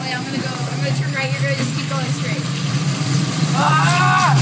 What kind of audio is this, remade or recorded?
recorded